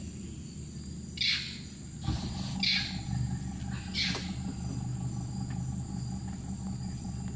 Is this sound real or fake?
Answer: real